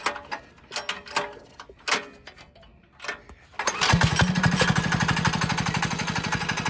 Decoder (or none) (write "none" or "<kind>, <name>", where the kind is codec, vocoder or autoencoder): none